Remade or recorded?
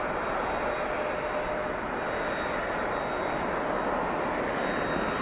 recorded